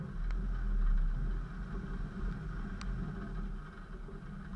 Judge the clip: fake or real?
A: real